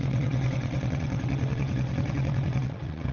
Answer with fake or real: fake